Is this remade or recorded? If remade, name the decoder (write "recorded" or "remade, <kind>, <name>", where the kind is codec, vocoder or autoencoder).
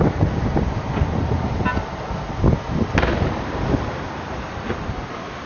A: recorded